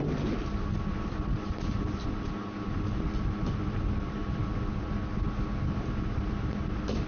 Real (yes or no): yes